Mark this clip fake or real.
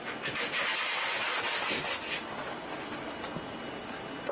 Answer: real